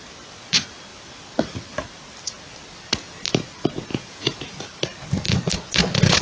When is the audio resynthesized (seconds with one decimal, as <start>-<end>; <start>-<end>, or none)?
3.9-4.7